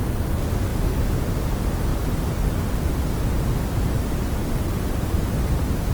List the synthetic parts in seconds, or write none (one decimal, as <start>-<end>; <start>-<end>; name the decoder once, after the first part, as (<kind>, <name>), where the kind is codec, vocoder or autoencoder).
none

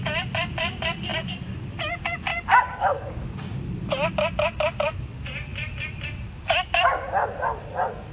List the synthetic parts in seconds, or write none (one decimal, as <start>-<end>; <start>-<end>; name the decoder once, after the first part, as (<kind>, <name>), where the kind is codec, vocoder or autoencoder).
0.0-2.3 (vocoder, BigVGAN v2); 4.7-8.1

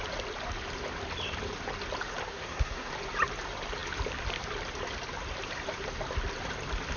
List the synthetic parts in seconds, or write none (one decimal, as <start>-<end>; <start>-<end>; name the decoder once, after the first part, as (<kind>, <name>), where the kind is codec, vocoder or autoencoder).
2.3-2.9 (codec, SNAC)